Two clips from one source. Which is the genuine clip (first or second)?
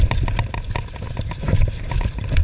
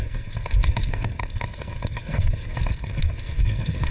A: first